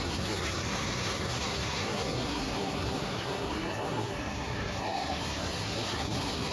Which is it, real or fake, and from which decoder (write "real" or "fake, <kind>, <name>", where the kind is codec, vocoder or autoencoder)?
fake, codec, SNAC